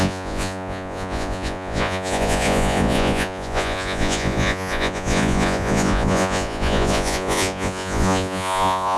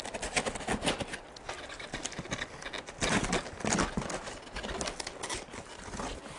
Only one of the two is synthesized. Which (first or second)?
first